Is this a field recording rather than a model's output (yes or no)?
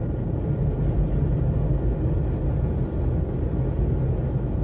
yes